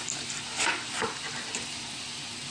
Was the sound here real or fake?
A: real